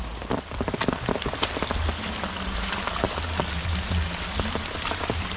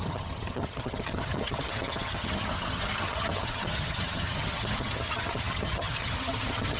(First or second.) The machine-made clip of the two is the second